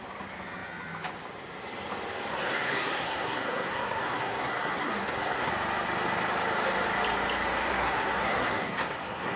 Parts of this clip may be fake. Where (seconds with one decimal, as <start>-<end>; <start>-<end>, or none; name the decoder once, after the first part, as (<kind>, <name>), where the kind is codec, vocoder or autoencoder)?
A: 2.3-5.5 (codec, SNAC); 7.7-9.4